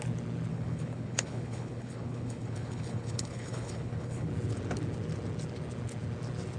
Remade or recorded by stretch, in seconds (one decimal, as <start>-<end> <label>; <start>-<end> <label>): 0.0-0.5 recorded; 0.5-4.3 remade; 4.3-6.6 recorded